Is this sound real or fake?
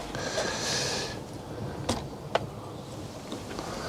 real